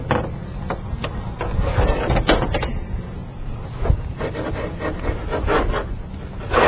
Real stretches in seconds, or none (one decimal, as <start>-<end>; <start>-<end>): 0.0-6.7